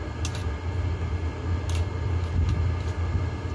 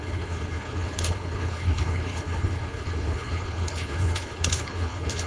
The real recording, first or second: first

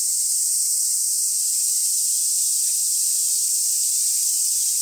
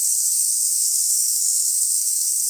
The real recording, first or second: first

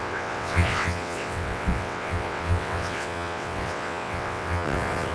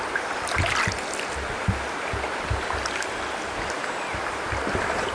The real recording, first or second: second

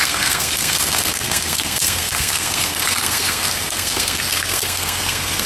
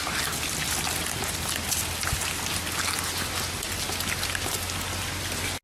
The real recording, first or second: second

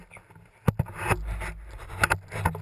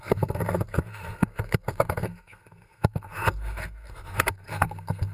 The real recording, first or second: first